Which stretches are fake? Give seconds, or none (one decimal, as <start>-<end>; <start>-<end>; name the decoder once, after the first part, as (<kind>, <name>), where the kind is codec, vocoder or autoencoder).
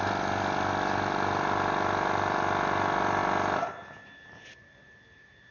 none